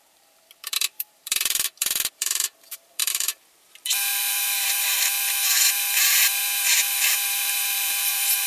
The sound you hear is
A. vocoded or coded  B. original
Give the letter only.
A